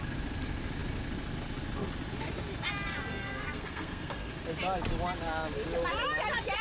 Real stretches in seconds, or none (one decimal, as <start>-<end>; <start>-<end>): 0.0-3.1; 4.3-6.6